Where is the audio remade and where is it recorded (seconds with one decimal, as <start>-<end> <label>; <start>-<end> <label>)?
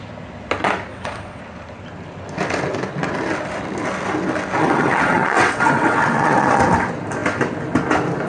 0.0-0.9 recorded; 0.9-1.4 remade; 1.4-4.6 recorded; 4.6-6.6 remade; 6.6-8.3 recorded